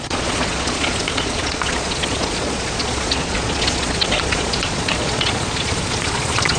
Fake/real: fake